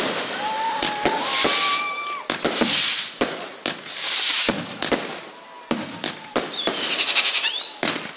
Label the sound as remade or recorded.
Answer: recorded